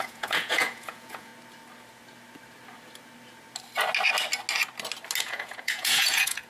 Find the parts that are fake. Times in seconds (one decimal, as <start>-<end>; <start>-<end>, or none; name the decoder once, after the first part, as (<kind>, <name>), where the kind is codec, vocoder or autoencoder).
0.0-1.3 (vocoder, Vocos); 5.2-6.5